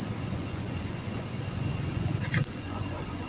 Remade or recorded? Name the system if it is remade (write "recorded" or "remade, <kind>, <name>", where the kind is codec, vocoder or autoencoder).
remade, vocoder, Vocos